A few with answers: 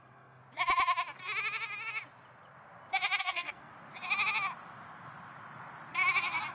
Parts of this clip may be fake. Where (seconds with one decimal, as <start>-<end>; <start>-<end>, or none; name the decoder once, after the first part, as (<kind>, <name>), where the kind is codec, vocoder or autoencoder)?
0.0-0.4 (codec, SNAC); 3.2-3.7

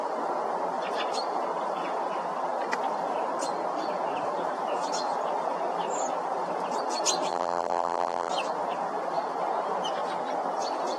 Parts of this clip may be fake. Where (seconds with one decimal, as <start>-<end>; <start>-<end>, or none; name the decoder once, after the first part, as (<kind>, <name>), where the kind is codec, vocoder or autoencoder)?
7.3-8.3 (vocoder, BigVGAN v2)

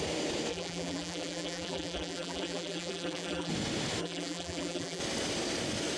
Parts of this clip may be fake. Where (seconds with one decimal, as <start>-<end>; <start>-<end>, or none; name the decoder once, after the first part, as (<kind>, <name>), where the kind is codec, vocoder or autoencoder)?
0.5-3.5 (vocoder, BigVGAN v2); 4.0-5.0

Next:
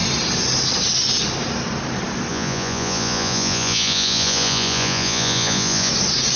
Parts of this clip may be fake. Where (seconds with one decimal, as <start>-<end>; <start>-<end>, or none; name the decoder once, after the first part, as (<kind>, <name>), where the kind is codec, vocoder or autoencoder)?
2.3-5.9 (vocoder, Vocos)